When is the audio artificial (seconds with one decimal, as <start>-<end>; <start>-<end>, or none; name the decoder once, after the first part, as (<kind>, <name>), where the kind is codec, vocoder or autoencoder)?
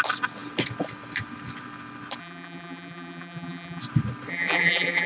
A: 2.2-3.8 (vocoder, BigVGAN v2); 4.3-5.1